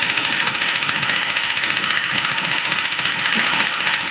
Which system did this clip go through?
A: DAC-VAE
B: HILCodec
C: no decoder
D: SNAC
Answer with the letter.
A